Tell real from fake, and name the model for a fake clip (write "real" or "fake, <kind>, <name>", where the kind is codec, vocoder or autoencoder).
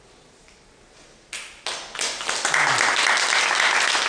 real